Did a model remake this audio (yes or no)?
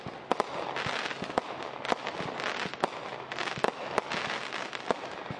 no